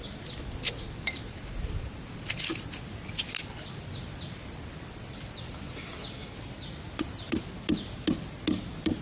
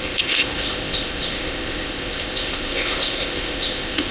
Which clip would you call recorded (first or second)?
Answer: first